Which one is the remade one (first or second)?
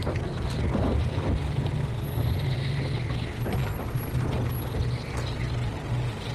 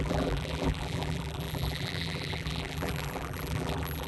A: second